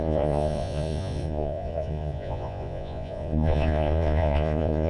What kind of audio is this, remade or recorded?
remade